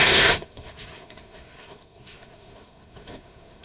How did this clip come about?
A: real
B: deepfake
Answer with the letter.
B